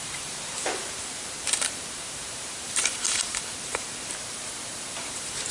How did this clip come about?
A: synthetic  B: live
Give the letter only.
A